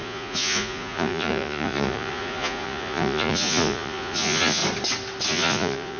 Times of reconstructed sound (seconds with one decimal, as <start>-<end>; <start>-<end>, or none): 0.0-4.6; 5.3-6.0